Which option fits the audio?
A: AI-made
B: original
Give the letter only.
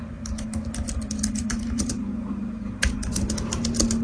B